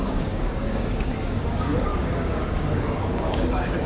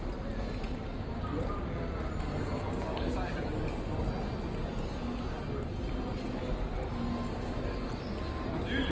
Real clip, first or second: second